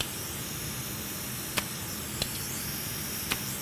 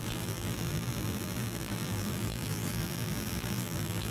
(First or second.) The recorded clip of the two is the first